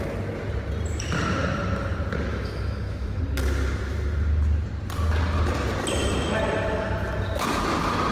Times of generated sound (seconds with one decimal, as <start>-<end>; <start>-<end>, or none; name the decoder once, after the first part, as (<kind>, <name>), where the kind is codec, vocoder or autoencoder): 2.3-3.2 (autoencoder, DAC-VAE)